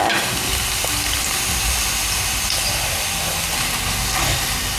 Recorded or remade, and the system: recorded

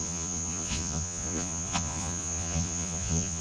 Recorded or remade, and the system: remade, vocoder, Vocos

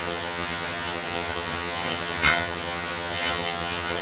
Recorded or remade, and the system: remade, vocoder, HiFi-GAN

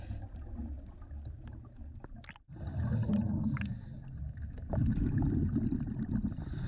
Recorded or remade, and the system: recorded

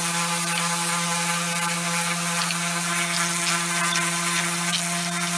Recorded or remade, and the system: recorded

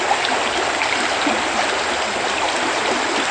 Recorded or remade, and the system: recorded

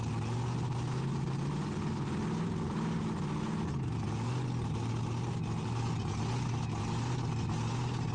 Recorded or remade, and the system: recorded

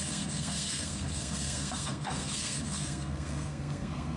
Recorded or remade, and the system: remade, codec, SNAC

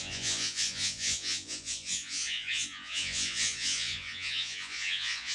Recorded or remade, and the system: remade, vocoder, Vocos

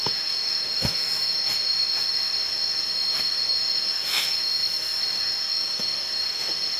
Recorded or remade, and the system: remade, autoencoder, DAC-VAE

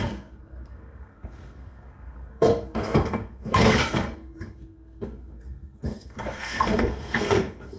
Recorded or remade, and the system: remade, codec, SNAC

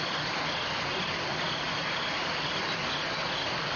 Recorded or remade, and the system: recorded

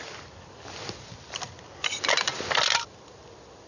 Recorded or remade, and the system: remade, vocoder, BigVGAN v2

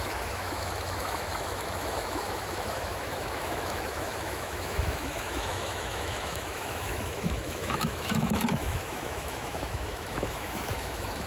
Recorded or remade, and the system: remade, autoencoder, DAC-VAE